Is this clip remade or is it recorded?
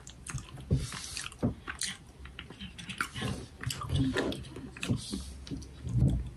recorded